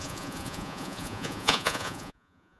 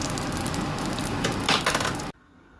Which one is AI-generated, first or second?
first